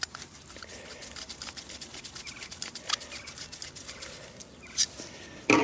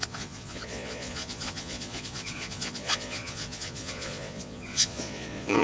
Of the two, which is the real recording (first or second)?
first